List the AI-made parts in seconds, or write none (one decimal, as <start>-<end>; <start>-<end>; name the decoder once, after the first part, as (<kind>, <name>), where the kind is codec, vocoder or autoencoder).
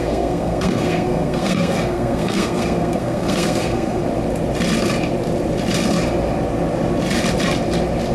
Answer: 0.0-4.0 (codec, SNAC)